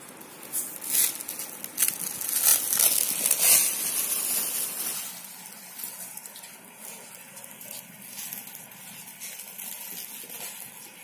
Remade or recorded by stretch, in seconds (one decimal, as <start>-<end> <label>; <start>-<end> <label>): 0.0-11.0 recorded